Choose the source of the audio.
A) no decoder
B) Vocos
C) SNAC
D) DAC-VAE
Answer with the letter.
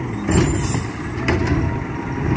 A